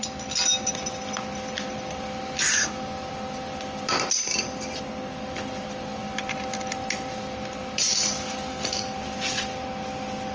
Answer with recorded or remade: recorded